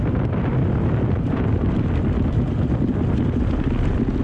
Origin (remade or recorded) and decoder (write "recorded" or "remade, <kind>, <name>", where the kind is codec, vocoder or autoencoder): recorded